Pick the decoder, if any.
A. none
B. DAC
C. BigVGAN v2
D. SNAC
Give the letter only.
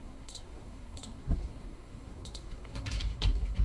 D